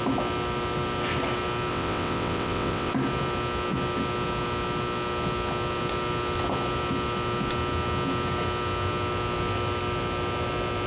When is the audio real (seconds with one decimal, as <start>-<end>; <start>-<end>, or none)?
0.0-1.7; 2.9-10.9